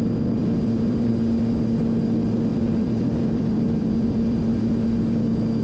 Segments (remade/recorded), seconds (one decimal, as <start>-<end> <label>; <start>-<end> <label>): 0.0-0.4 recorded; 0.4-1.1 remade; 1.1-2.5 recorded; 2.5-4.4 remade; 4.4-5.6 recorded